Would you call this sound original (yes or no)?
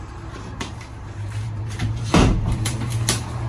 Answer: no